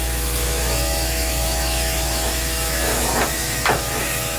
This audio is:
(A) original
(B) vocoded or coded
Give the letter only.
B